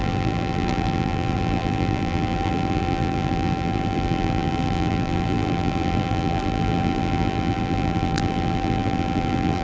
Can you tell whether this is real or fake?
fake